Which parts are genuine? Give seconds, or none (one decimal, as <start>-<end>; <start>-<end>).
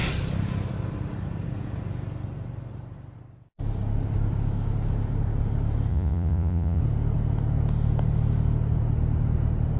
0.0-5.9; 6.8-9.8